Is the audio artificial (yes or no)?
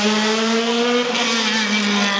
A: no